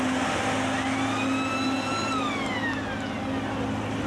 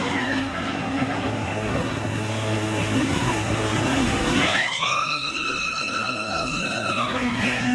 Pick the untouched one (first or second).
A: first